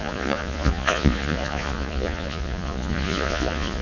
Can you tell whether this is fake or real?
fake